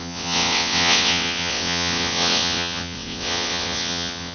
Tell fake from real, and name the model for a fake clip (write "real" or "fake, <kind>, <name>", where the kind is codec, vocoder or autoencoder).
fake, vocoder, WaveNeXt